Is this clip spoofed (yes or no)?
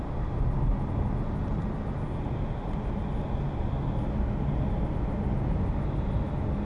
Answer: no